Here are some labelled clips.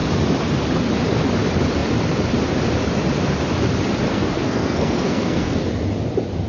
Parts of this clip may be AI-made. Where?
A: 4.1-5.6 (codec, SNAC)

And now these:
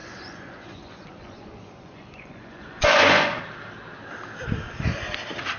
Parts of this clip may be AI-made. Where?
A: 0.0-3.4 (vocoder, Vocos)